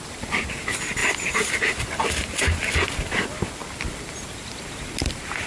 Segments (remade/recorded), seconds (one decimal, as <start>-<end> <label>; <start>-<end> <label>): 0.0-1.0 recorded; 1.0-1.5 remade; 1.5-5.5 recorded

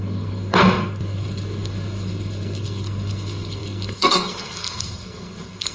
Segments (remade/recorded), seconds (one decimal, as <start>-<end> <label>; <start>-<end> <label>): 0.0-5.7 remade

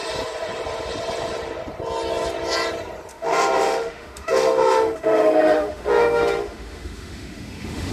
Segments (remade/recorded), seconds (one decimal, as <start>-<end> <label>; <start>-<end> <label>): 0.0-3.1 recorded; 3.1-7.9 remade

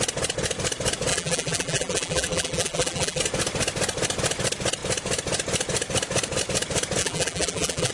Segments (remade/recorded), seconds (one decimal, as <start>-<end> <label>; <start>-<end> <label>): 0.0-1.1 recorded; 1.1-3.2 remade; 3.2-7.0 recorded; 7.0-7.9 remade

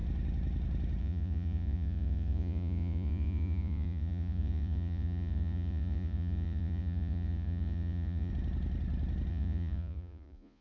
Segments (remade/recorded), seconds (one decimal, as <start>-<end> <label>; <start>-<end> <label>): 0.0-1.0 recorded; 1.0-8.3 remade; 8.3-9.3 recorded; 9.3-10.6 remade

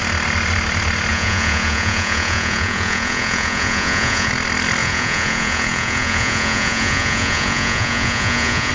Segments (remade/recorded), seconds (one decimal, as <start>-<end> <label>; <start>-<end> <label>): 0.0-1.1 recorded; 1.1-4.3 remade; 4.3-4.8 recorded; 4.8-8.7 remade

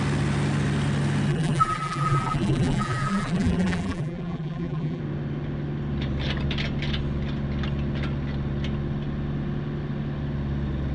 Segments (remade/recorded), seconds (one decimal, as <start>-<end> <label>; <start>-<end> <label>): 0.0-1.3 recorded; 1.3-5.0 remade; 5.0-10.9 recorded

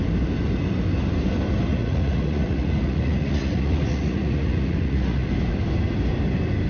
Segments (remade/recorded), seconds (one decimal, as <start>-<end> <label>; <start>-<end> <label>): 0.0-1.7 recorded; 1.7-5.3 remade; 5.3-6.7 recorded